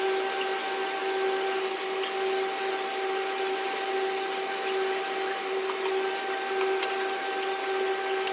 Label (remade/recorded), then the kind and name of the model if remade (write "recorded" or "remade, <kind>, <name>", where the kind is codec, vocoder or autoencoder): recorded